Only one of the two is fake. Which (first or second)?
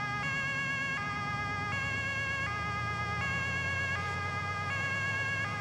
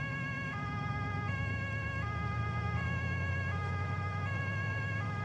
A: second